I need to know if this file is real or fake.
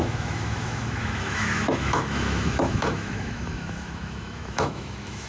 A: fake